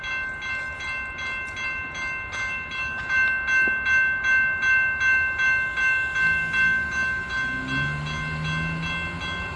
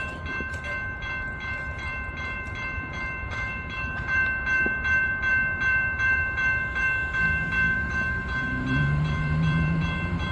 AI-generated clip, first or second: second